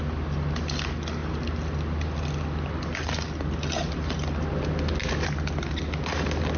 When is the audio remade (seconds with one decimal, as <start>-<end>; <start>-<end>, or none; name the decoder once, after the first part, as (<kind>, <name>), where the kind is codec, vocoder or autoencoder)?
none